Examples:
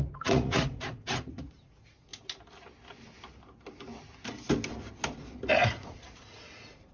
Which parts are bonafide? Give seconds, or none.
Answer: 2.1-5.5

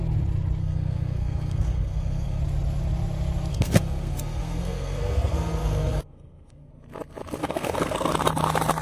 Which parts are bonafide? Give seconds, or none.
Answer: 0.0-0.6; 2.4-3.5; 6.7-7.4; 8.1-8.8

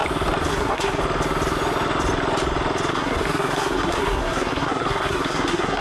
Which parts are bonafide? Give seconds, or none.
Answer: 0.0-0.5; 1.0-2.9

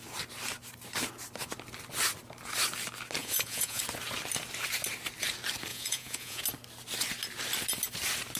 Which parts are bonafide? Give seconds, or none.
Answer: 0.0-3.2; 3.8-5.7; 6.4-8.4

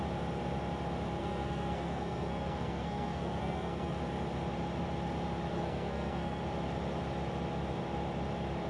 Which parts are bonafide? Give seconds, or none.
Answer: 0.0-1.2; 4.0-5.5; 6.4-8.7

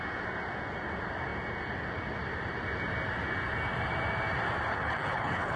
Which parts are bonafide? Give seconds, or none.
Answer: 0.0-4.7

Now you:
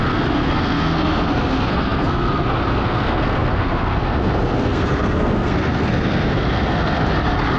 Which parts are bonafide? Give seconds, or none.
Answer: 7.0-7.6

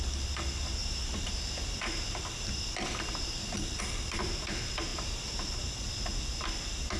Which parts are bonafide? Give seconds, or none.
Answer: 0.0-0.8; 3.8-7.0